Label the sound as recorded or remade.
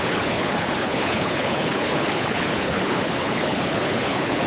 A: remade